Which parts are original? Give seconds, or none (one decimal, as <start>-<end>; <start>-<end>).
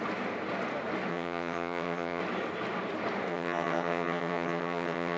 0.0-1.1; 2.2-3.3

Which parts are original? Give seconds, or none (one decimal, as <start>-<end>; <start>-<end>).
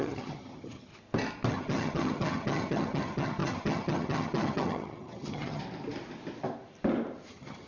0.9-1.5; 5.6-7.3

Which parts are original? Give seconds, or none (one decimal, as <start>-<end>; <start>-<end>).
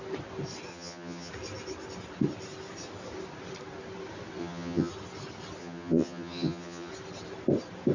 0.0-0.7; 1.3-4.4; 4.9-5.6; 6.9-7.9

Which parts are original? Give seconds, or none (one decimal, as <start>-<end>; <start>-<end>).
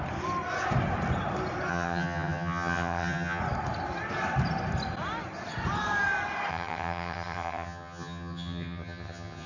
0.0-1.7; 3.4-6.5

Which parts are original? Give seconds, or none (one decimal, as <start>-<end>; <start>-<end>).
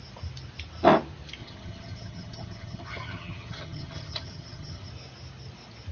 0.0-1.4; 4.9-5.9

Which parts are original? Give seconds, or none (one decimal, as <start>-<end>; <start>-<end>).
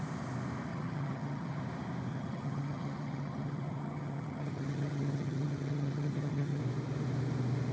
0.0-0.7; 1.6-2.1; 6.6-7.7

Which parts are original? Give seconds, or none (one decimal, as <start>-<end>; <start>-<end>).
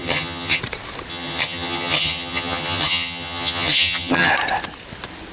0.6-1.1; 4.3-5.3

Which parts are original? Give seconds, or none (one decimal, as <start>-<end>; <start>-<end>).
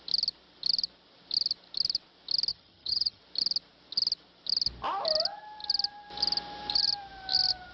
0.0-2.5; 3.2-7.7